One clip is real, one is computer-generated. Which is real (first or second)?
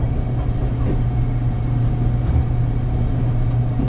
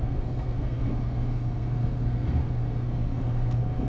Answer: first